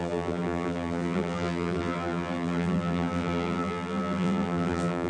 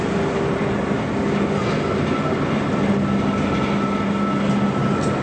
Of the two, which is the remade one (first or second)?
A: first